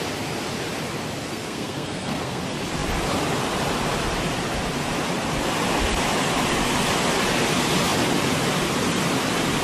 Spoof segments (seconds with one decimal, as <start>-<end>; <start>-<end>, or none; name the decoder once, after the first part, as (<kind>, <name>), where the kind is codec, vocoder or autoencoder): 1.2-2.4 (codec, SNAC)